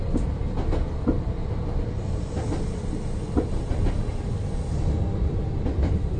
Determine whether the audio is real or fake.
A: real